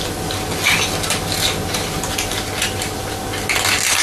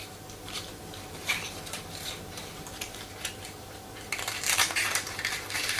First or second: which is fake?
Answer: second